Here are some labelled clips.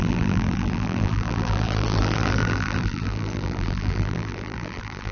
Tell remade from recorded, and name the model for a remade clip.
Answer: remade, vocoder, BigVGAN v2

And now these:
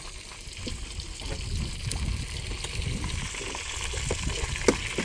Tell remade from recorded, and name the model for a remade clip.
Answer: recorded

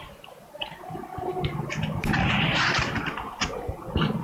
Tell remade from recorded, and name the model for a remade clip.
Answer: remade, vocoder, BigVGAN v2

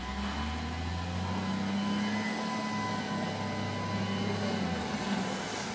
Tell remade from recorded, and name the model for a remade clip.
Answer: recorded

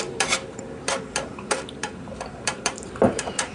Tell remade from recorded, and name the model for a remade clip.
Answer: remade, vocoder, BigVGAN v2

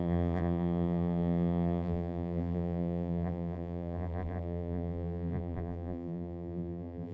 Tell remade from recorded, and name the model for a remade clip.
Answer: remade, vocoder, BigVGAN v2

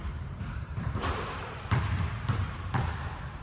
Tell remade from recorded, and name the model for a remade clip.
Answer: remade, vocoder, BigVGAN v2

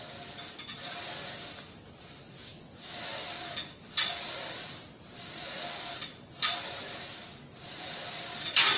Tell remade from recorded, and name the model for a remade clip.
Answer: recorded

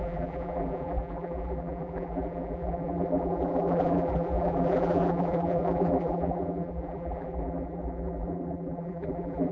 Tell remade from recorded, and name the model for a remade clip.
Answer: remade, vocoder, BigVGAN v2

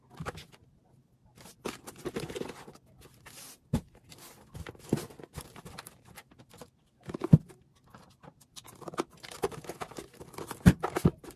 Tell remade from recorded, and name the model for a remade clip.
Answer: recorded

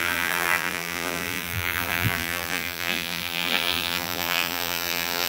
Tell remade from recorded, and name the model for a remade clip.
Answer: remade, vocoder, BigVGAN v2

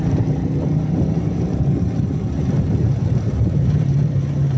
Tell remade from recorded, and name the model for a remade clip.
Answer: remade, vocoder, BigVGAN v2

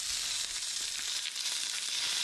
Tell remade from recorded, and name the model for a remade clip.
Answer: remade, vocoder, BigVGAN v2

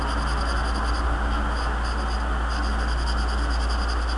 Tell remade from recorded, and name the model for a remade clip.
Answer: recorded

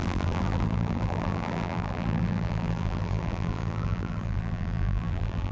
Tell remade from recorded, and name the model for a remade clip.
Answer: remade, vocoder, BigVGAN v2